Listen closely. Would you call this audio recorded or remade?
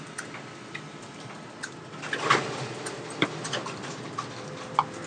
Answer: recorded